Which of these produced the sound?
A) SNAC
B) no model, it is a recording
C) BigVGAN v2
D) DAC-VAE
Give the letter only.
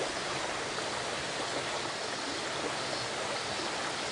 B